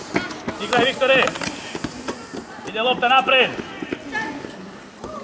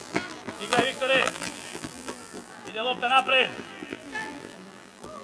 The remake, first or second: second